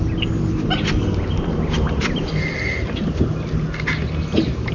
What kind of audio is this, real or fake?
real